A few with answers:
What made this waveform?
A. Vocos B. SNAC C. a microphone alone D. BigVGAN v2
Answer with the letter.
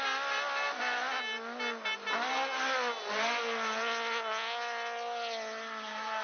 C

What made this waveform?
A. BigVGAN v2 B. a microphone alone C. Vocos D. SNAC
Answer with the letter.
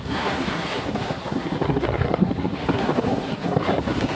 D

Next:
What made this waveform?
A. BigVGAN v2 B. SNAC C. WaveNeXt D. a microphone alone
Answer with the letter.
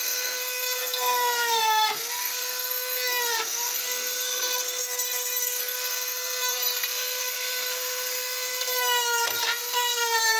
B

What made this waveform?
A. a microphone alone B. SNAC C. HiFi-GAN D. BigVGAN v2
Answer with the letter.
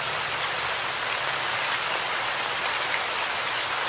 A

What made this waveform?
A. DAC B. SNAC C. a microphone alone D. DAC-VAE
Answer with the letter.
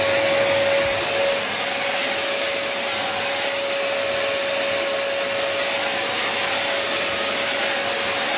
C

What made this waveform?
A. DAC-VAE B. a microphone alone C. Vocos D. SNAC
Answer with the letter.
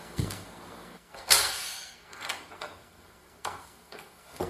D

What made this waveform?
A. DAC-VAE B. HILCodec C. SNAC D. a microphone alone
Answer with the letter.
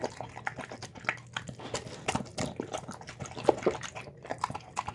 D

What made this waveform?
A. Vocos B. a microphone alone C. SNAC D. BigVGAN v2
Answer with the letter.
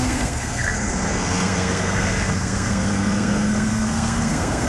C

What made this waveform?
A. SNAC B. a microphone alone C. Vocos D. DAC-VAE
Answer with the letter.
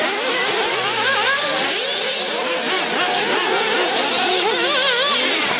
B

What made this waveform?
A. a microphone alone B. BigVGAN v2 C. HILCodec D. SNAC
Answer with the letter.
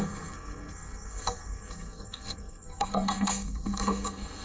D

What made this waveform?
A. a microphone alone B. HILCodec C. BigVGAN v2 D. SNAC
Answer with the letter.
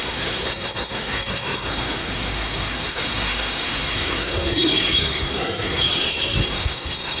D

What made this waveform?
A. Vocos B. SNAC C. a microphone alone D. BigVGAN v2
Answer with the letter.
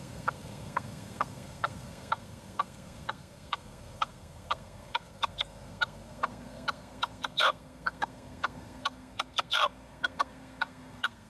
B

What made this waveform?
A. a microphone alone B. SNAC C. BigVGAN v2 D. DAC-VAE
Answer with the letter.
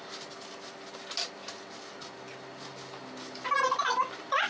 A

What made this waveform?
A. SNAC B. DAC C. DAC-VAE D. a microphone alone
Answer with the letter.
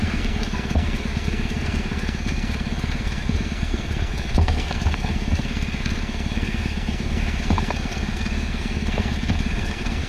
A